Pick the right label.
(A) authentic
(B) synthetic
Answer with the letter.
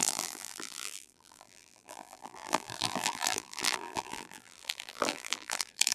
B